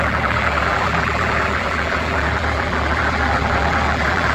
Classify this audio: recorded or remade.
remade